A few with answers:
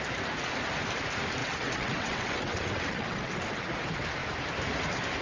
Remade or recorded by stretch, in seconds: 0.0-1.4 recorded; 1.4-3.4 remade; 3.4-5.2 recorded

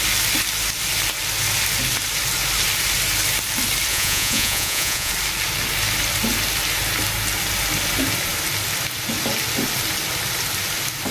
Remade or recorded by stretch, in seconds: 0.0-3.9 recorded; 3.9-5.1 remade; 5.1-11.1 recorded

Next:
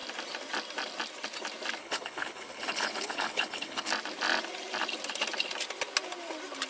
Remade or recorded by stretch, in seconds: 0.0-1.8 recorded; 1.8-3.9 remade; 3.9-6.7 recorded